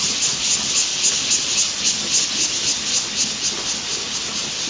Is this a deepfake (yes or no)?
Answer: no